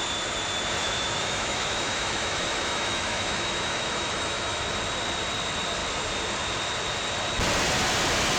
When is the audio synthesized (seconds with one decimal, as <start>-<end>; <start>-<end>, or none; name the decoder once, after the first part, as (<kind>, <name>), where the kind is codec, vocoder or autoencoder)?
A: 0.8-4.6 (autoencoder, DAC-VAE)